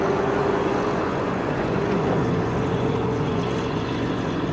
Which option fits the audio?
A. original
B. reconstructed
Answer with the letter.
B